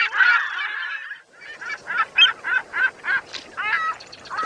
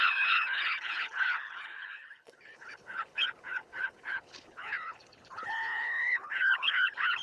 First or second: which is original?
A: first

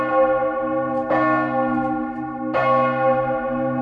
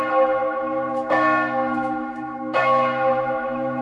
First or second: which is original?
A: first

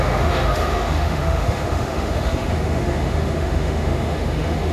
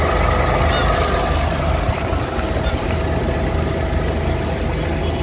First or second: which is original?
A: second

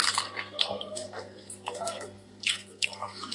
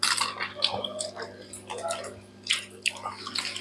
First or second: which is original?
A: second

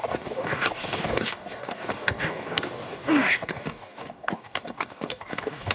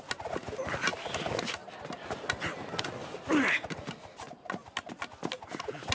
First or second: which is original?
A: second